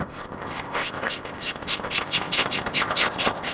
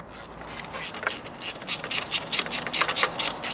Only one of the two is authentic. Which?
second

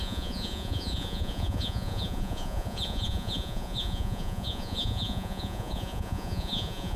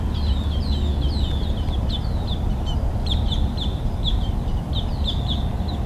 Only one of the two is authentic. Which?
second